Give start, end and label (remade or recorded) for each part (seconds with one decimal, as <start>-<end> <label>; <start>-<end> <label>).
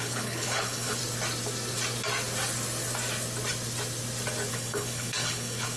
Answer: 0.0-1.0 remade; 1.0-4.5 recorded; 4.5-5.8 remade